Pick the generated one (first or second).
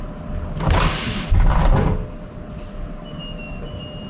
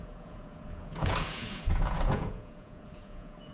second